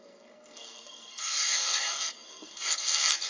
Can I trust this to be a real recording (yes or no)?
no